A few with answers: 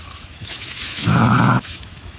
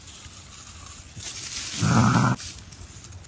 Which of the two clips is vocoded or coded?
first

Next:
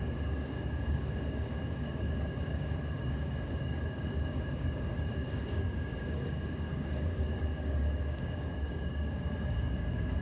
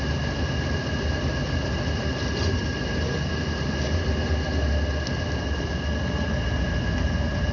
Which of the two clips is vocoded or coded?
first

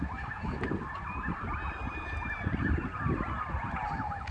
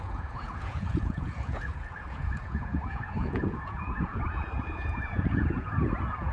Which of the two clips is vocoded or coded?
second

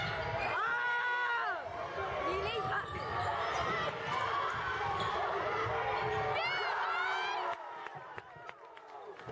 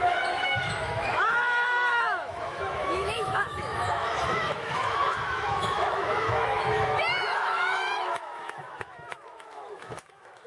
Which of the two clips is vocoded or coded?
second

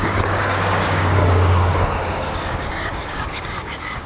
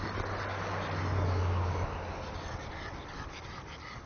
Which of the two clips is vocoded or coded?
first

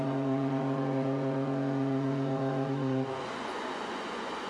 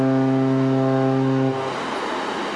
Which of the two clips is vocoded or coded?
first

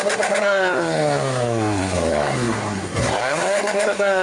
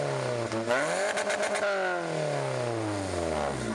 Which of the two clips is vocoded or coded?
first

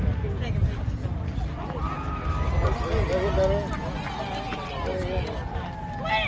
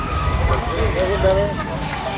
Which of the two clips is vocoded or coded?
second